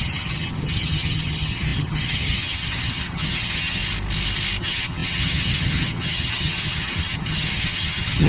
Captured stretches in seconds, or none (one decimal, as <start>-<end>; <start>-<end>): 3.8-4.6